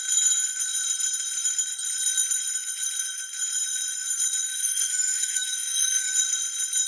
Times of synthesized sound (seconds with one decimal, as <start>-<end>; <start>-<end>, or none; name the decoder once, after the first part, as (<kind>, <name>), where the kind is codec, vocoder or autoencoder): 4.5-6.1 (autoencoder, DAC-VAE)